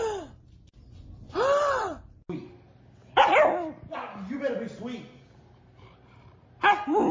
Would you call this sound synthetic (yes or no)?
no